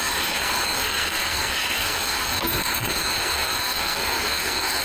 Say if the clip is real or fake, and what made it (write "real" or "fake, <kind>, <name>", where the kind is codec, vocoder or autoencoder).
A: fake, codec, SNAC